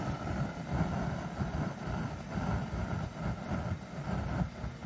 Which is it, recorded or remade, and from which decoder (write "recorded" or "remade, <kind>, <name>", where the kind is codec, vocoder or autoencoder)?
recorded